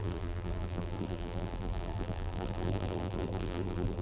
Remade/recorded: remade